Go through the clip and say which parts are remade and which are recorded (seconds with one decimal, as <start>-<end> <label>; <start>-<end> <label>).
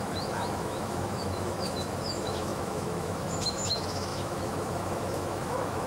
0.0-5.9 remade